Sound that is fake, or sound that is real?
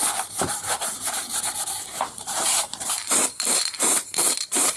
fake